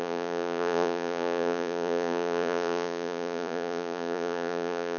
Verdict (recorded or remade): remade